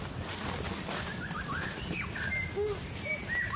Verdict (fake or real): real